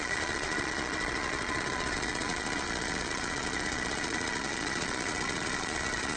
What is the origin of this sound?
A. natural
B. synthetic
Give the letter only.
B